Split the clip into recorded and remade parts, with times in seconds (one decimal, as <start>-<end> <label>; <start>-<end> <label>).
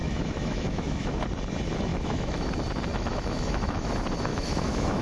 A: 0.0-1.2 remade; 1.2-1.9 recorded; 1.9-2.5 remade; 2.5-2.9 recorded; 2.9-3.9 remade; 3.9-4.3 recorded; 4.3-5.0 remade